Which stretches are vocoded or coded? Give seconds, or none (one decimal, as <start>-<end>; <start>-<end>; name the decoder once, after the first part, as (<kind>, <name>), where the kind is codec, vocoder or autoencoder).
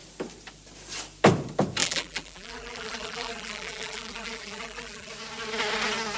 1.8-5.1 (vocoder, BigVGAN v2)